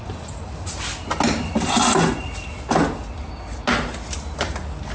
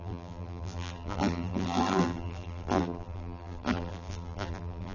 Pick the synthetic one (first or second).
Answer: second